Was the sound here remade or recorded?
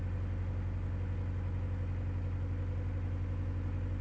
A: recorded